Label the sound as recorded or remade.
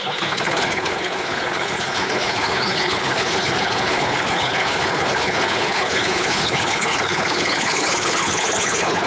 remade